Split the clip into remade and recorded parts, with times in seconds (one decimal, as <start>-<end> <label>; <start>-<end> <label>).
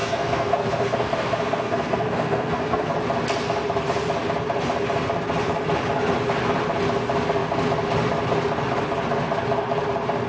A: 0.0-2.9 remade; 2.9-10.3 recorded